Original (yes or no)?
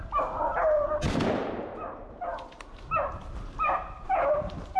yes